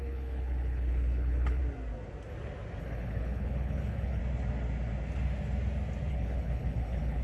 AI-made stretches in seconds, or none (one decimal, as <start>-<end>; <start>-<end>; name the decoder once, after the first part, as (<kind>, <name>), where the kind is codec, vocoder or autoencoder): 0.0-1.6 (codec, HILCodec); 2.8-4.2; 6.1-7.2